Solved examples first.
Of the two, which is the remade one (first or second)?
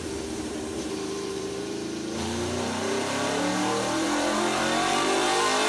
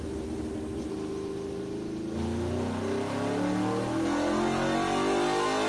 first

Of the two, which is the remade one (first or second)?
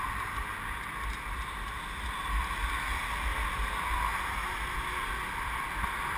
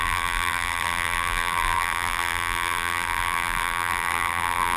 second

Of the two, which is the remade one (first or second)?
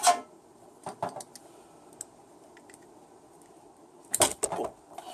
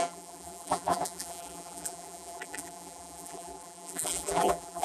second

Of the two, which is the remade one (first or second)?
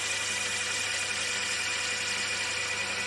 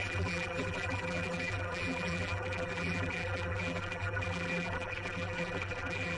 second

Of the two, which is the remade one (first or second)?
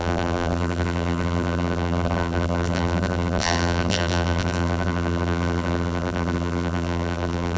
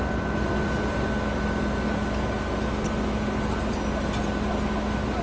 first